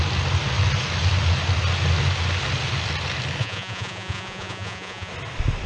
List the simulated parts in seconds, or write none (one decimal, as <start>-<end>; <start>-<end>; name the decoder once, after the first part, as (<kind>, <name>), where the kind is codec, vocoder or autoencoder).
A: 3.4-5.1 (vocoder, Vocos)